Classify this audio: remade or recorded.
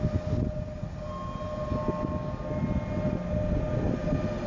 recorded